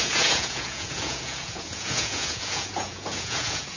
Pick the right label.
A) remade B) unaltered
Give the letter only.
A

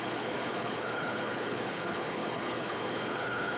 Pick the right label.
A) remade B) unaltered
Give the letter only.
A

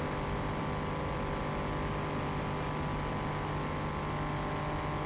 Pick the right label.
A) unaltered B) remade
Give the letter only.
A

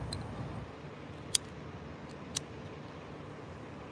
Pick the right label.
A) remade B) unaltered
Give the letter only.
B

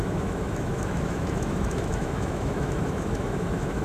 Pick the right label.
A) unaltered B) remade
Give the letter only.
B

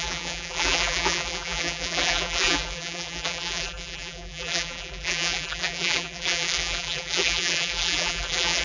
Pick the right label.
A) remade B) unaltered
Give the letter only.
A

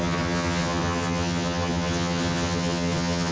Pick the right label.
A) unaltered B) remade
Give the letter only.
B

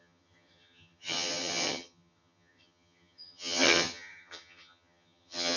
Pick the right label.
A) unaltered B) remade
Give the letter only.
B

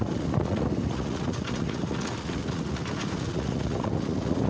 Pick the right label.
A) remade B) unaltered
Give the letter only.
A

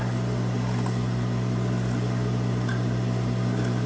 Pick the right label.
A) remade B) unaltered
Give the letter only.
B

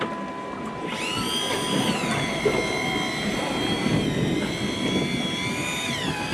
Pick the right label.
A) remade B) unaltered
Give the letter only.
B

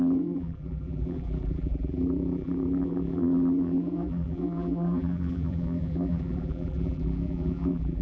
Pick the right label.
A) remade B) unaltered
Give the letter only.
A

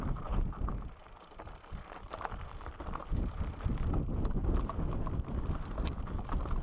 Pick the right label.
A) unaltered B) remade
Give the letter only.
A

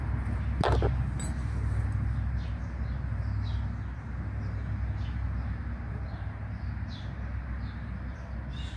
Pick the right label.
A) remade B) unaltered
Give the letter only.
B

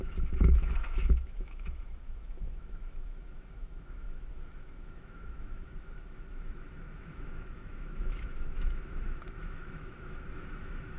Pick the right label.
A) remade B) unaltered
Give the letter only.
A